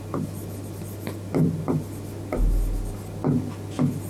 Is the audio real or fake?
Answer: real